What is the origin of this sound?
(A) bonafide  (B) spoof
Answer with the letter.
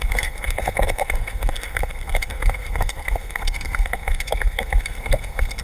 B